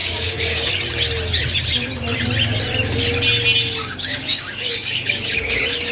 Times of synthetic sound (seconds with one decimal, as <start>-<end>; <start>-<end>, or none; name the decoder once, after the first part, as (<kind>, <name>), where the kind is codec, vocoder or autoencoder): 0.0-0.7 (codec, DAC); 3.8-5.5